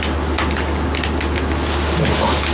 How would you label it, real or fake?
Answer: real